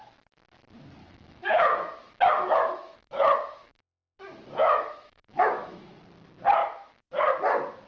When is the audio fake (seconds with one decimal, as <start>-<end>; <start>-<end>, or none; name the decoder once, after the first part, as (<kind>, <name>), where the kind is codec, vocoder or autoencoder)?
1.0-3.8 (autoencoder, DAC-VAE); 4.6-6.0; 6.6-7.1